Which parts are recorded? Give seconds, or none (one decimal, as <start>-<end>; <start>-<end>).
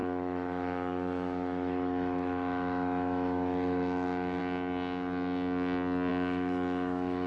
4.4-6.1